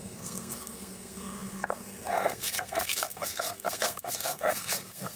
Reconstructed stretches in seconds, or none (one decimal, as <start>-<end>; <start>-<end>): 0.0-5.2